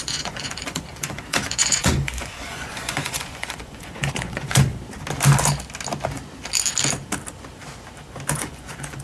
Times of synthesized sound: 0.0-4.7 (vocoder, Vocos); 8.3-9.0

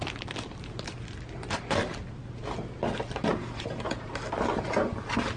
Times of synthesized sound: 3.3-4.1 (vocoder, Vocos)

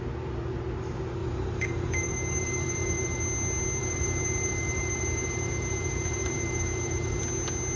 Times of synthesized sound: 1.2-3.2 (vocoder, BigVGAN v2); 3.8-7.2

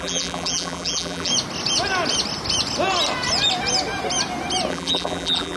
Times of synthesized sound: 0.0-1.3 (vocoder, BigVGAN v2); 4.7-5.6

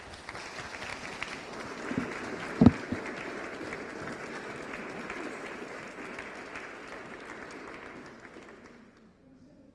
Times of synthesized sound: none

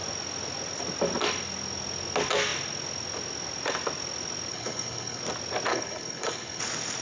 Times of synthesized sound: 4.5-5.2 (codec, HILCodec); 5.7-6.6

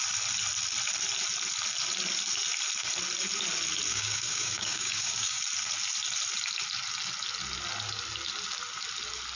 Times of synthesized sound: 3.9-5.4 (codec, DAC)

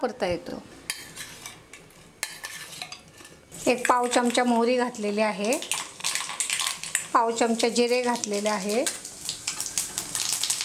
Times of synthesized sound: none